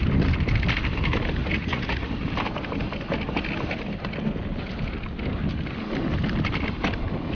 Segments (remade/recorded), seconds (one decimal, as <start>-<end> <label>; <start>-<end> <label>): 0.0-1.4 recorded; 1.4-2.1 remade; 2.1-7.3 recorded